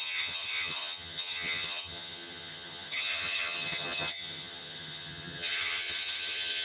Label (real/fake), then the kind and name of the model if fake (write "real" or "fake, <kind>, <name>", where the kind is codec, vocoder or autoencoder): fake, vocoder, HiFi-GAN